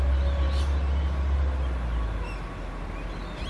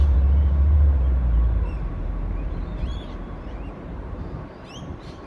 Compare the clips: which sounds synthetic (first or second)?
second